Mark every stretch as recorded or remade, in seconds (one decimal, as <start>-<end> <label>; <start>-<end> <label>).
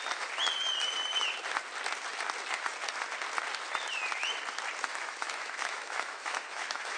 0.0-4.9 recorded; 4.9-7.0 remade